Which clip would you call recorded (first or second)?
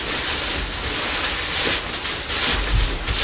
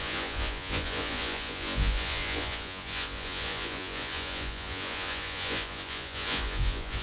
first